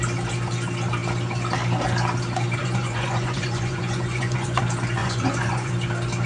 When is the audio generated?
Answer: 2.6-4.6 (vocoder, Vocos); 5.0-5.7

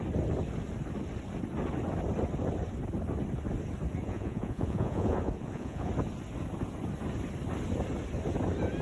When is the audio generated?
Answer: 4.0-5.9 (vocoder, Vocos)